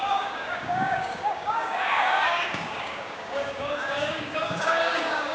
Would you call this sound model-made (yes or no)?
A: yes